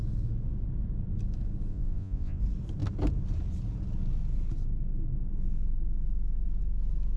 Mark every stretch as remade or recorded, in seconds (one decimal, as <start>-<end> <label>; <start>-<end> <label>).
0.0-1.7 recorded; 1.7-2.4 remade; 2.4-7.2 recorded

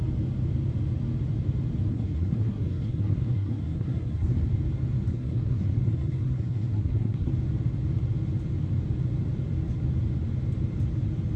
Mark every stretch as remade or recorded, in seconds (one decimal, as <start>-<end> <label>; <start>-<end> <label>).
0.0-1.9 recorded; 1.9-4.5 remade; 4.5-5.1 recorded; 5.1-7.3 remade; 7.3-11.4 recorded

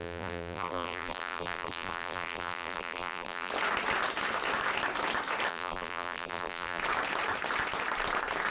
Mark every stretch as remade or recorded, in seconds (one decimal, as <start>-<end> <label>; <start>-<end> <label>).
0.0-3.5 remade; 3.5-5.5 recorded; 5.5-6.8 remade; 6.8-8.5 recorded

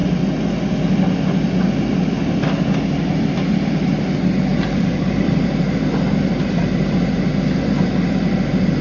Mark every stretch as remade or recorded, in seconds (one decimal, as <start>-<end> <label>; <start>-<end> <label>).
0.0-4.5 recorded; 4.5-7.1 remade; 7.1-8.8 recorded

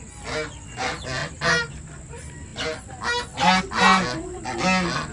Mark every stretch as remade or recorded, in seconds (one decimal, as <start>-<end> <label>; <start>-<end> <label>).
0.0-5.1 recorded